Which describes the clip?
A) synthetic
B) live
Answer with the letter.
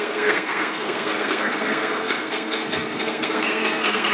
A